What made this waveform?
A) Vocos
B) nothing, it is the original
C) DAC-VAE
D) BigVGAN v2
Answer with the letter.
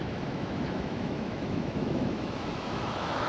C